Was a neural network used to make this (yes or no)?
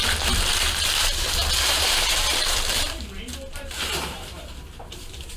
yes